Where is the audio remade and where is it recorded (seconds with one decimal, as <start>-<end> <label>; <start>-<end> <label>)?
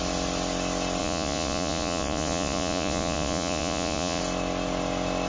0.0-1.0 recorded; 1.0-4.2 remade; 4.2-5.3 recorded